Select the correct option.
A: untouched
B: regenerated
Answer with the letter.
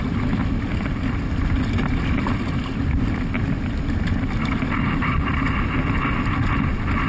A